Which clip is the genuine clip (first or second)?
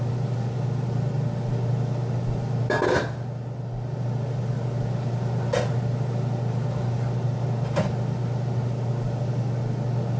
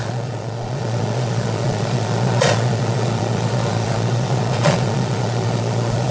first